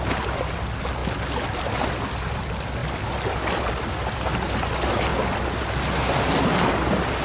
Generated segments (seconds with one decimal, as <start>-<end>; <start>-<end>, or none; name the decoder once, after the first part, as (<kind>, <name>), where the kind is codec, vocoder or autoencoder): 1.0-1.6 (vocoder, BigVGAN v2)